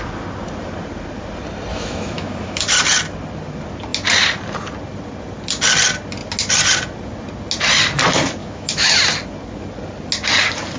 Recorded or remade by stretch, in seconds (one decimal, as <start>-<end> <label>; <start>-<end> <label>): 0.0-1.7 recorded; 1.7-2.6 remade; 2.6-8.4 recorded; 8.4-9.0 remade; 9.0-10.8 recorded